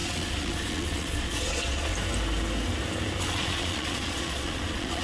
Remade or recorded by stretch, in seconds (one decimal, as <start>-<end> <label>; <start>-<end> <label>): 0.0-1.9 remade; 1.9-3.2 recorded; 3.2-5.0 remade